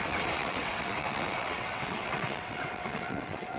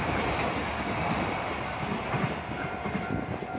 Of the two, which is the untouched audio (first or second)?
second